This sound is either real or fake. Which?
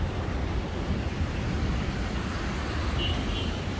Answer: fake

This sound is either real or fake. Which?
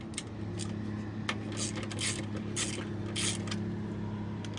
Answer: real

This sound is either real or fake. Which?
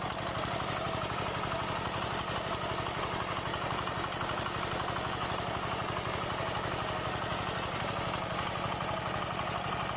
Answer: fake